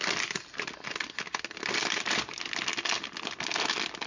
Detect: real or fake real